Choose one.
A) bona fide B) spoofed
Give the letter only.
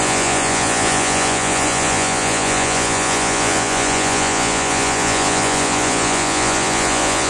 B